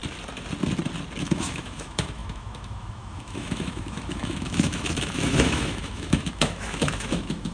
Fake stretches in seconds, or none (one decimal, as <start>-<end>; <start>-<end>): 1.2-7.5